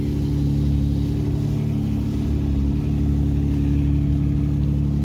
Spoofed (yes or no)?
no